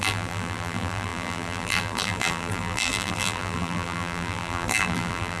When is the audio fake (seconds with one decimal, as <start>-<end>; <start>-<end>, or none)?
0.0-5.4